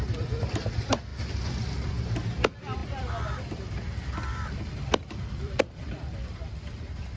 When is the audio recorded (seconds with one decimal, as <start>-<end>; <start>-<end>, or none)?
0.0-2.8; 6.8-7.2